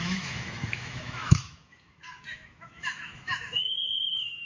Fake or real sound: fake